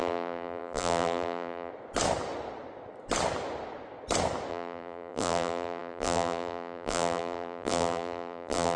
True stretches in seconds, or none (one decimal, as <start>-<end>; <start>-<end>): 1.7-4.5